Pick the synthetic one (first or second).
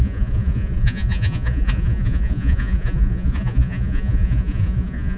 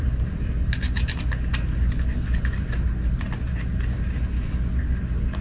first